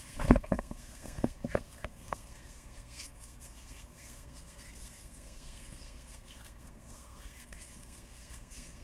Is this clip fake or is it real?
fake